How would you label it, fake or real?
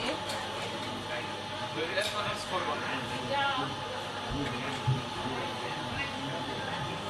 real